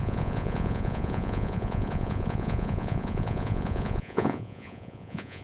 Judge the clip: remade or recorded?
remade